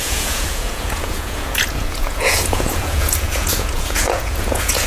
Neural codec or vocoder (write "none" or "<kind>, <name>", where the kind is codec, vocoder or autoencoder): vocoder, Vocos